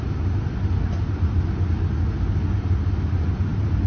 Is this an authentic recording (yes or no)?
yes